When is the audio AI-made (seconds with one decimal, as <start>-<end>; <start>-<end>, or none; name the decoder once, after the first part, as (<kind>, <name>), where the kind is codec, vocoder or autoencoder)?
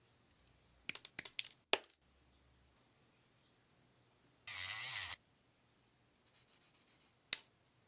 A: none